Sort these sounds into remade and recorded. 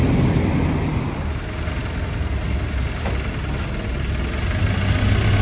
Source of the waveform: recorded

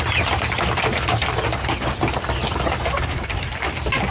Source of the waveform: recorded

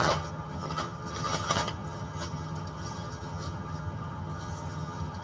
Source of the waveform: remade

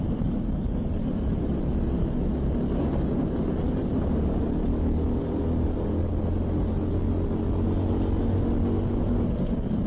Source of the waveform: recorded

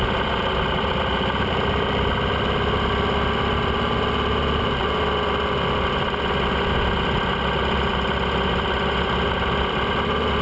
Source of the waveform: recorded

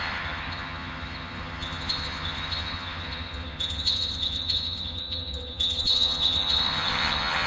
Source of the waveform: remade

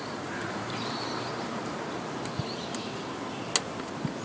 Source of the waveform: recorded